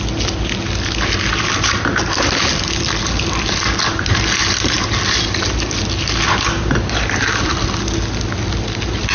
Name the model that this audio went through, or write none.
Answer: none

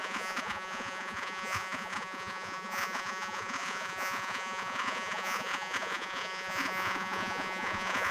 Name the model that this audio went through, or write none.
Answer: vocoder, Vocos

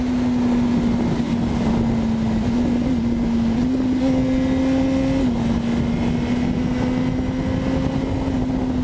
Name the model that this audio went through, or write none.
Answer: none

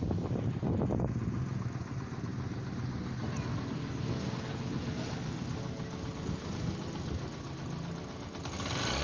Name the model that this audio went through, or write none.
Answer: none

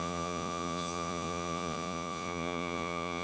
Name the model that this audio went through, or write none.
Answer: vocoder, Vocos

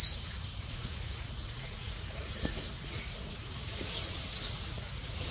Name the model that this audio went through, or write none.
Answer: vocoder, Vocos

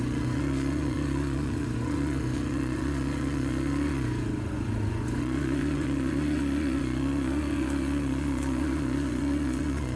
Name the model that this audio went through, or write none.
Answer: vocoder, Vocos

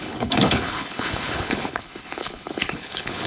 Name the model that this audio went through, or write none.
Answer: codec, HILCodec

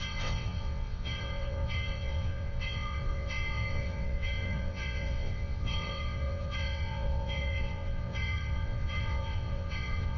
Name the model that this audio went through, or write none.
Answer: vocoder, WaveNeXt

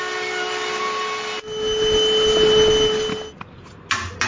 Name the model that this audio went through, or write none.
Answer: none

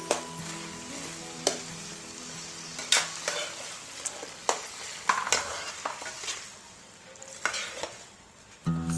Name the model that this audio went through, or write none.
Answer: none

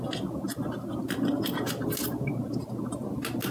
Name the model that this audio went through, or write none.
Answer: none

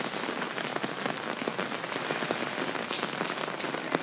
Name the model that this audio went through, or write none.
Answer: none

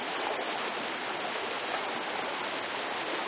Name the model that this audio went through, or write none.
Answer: none